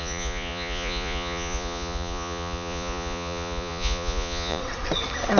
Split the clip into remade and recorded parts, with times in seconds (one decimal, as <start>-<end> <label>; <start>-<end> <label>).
0.0-4.6 remade; 4.6-5.4 recorded